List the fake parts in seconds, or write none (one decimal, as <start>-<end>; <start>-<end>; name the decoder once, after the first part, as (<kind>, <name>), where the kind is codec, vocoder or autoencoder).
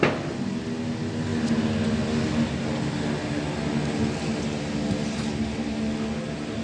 none